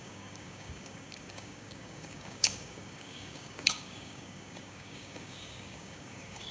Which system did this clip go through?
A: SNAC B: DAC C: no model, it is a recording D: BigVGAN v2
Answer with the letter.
B